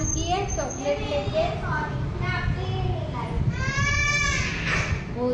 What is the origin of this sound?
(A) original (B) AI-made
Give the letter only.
A